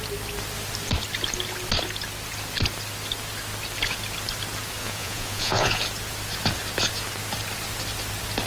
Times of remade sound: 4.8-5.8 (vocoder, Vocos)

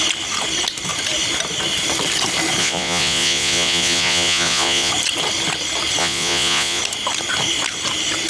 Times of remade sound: 2.6-4.9 (vocoder, Vocos); 6.0-6.8

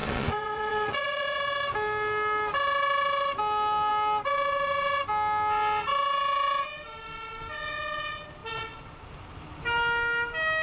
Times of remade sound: 0.0-1.4 (vocoder, Vocos)

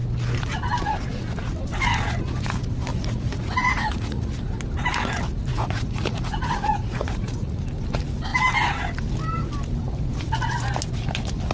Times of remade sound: 2.9-4.6 (vocoder, Vocos); 5.5-7.6